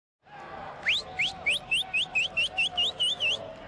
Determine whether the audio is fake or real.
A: real